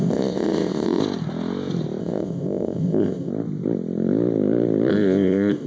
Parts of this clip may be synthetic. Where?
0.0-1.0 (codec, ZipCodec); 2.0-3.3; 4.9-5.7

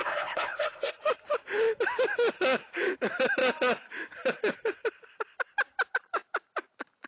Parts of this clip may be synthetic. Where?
0.0-0.9 (codec, ZipCodec)

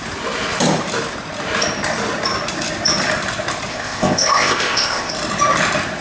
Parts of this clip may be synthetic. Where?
3.7-5.1 (codec, ZipCodec)